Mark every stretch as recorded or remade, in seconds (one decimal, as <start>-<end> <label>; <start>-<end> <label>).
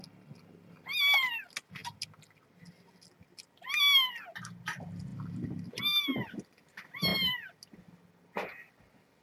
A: 0.0-9.2 recorded